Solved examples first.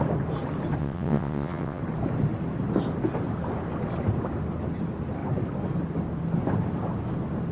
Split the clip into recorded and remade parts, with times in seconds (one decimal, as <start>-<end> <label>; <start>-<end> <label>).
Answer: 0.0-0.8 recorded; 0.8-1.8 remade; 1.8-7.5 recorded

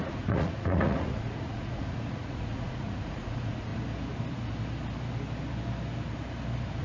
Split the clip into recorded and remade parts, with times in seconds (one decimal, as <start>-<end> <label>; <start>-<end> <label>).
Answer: 0.0-3.7 remade; 3.7-6.8 recorded

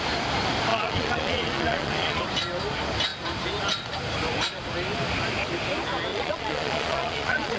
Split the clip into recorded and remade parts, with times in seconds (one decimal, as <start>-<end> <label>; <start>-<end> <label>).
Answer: 0.0-0.7 recorded; 0.7-2.2 remade; 2.2-6.1 recorded; 6.1-7.6 remade

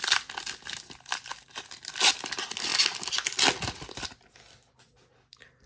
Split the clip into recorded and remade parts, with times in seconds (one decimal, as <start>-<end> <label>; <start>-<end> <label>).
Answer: 0.0-5.7 recorded

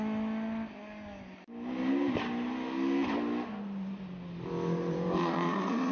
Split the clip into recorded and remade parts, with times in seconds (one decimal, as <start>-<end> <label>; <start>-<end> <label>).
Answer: 0.0-5.2 recorded; 5.2-5.9 remade

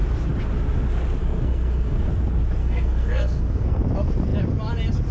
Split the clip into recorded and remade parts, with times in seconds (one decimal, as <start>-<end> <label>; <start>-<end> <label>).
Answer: 0.0-1.2 recorded; 1.2-2.1 remade; 2.1-2.6 recorded; 2.6-3.8 remade; 3.8-5.1 recorded

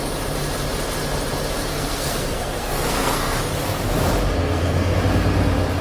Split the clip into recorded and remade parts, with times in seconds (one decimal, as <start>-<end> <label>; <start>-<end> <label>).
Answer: 0.0-1.7 recorded; 1.7-3.4 remade; 3.4-4.4 recorded; 4.4-5.0 remade; 5.0-5.8 recorded